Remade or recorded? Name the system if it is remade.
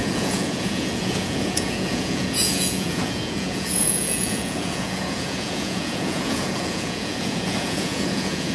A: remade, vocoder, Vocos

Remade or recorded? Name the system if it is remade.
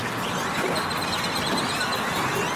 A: recorded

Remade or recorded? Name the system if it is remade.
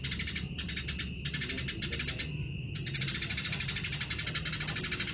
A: recorded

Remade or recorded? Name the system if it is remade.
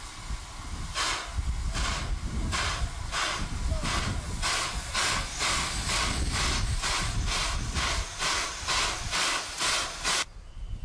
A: recorded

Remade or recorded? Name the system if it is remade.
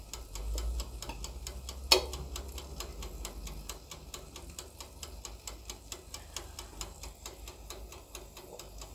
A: recorded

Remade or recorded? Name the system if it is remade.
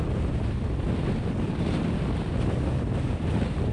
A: recorded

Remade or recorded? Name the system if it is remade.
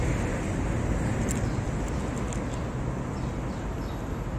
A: recorded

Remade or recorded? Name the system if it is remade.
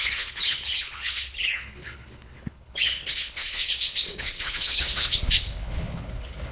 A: remade, codec, HILCodec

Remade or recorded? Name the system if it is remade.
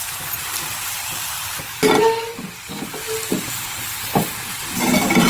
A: recorded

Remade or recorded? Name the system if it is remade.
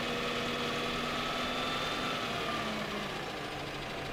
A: recorded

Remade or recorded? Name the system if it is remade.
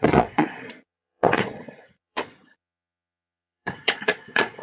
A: remade, vocoder, Vocos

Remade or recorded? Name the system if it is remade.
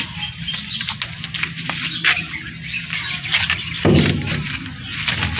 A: recorded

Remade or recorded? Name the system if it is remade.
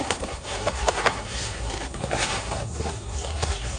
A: remade, codec, SNAC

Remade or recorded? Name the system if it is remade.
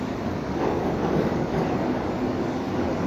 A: remade, codec, DAC